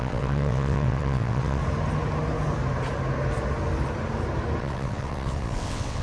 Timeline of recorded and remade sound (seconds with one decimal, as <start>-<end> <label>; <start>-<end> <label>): 0.0-1.6 remade; 1.6-4.6 recorded; 4.6-6.0 remade